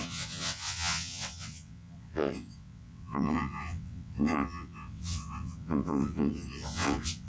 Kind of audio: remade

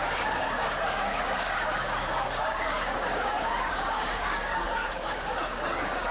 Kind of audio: remade